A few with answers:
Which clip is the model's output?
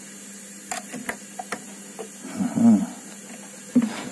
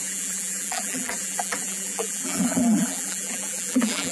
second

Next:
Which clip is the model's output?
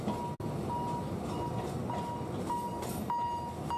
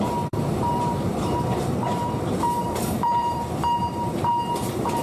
second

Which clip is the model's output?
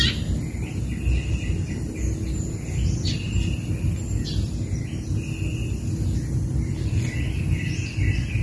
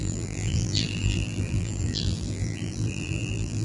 second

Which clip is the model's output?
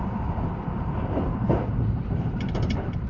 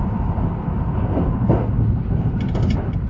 first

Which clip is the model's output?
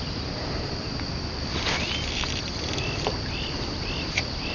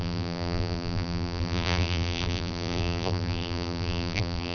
second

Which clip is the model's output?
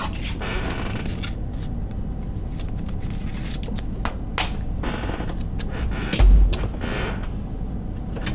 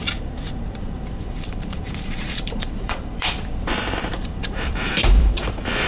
second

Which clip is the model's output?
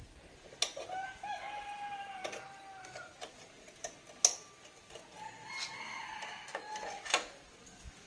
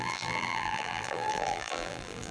second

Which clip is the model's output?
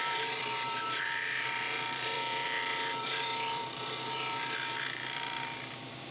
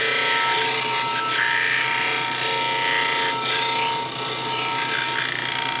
first